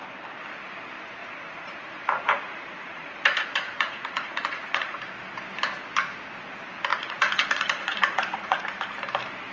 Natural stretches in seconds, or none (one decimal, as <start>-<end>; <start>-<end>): 0.0-1.2; 5.0-6.9; 8.6-9.5